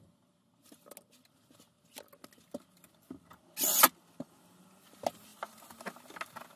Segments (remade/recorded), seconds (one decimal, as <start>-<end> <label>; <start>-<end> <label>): 0.0-6.6 recorded